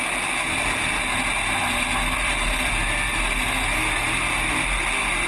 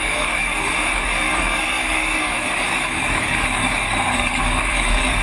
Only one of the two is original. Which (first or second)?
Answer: first